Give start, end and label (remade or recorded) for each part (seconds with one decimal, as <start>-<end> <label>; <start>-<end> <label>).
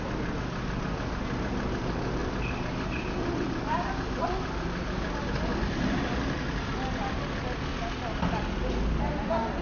0.0-9.6 recorded